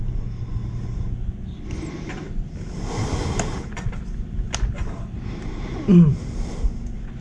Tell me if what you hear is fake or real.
real